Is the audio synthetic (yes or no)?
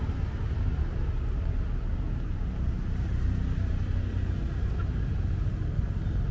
no